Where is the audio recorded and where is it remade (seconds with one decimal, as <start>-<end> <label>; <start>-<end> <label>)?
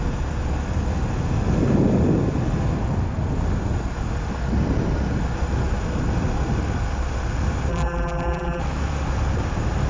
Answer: 0.0-7.7 recorded; 7.7-8.6 remade; 8.6-9.9 recorded